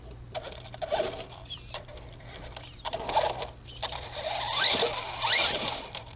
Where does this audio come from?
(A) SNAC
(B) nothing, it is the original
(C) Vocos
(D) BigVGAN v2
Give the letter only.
D